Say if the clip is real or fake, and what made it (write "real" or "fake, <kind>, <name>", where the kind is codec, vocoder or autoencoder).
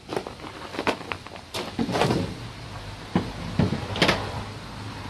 real